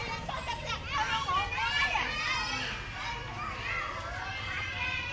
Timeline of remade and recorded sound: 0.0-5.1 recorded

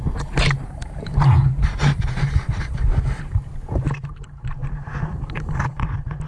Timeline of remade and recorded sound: 0.0-4.6 remade; 4.6-5.7 recorded; 5.7-6.3 remade

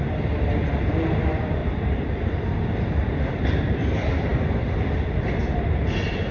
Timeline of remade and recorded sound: 0.0-1.6 recorded; 1.6-3.6 remade; 3.6-4.3 recorded; 4.3-5.7 remade; 5.7-6.3 recorded

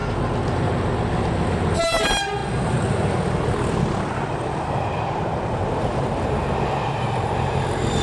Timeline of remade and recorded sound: 0.0-8.0 recorded

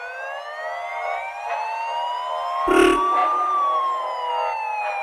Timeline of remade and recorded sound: 0.0-0.9 recorded; 0.9-1.5 remade; 1.5-3.2 recorded; 3.2-4.3 remade; 4.3-5.0 recorded

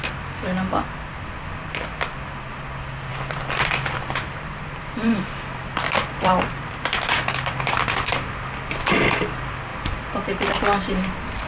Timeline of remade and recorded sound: 0.0-3.1 recorded; 3.1-8.1 remade; 8.1-9.7 recorded; 9.7-10.5 remade; 10.5-11.5 recorded

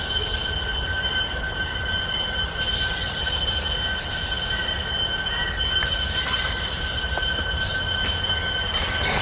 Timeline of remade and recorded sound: 0.0-9.2 recorded

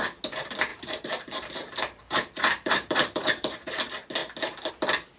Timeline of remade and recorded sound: 0.0-0.7 recorded; 0.7-3.8 remade; 3.8-5.2 recorded